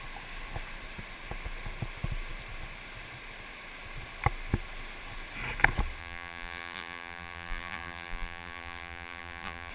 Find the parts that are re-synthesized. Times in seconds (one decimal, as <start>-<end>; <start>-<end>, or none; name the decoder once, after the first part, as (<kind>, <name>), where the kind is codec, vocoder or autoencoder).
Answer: 6.0-9.7 (vocoder, BigVGAN v2)